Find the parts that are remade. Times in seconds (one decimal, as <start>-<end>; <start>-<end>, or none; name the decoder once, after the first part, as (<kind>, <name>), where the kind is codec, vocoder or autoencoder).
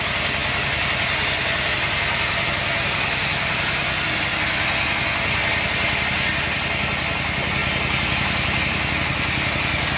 none